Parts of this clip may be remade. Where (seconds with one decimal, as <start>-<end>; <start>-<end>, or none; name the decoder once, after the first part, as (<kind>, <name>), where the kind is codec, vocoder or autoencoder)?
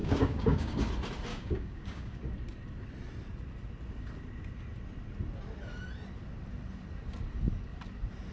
0.0-0.9 (codec, DAC); 1.3-2.2